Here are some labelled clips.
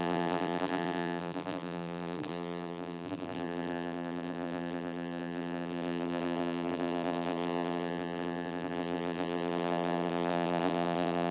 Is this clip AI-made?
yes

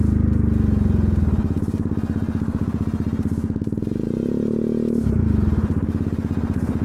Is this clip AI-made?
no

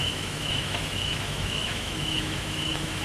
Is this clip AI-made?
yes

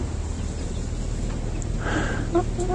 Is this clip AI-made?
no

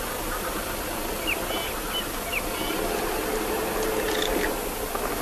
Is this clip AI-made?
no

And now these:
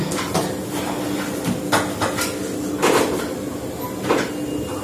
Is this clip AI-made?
no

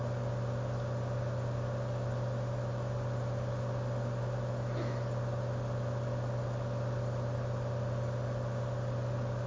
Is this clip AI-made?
no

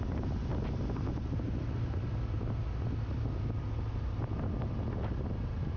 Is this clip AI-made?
no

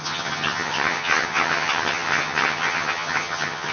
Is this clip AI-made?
yes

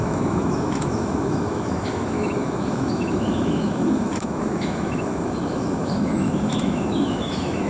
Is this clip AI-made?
yes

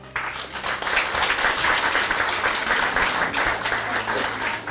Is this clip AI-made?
no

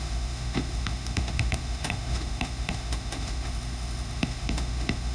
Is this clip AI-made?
yes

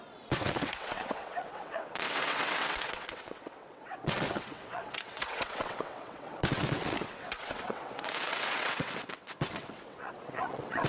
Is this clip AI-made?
yes